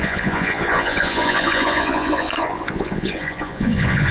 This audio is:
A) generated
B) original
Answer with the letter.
A